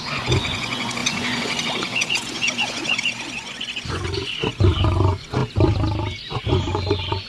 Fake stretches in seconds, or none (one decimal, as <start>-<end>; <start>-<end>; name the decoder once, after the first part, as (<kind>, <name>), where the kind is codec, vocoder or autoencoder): 0.0-5.4 (vocoder, Vocos); 6.4-7.3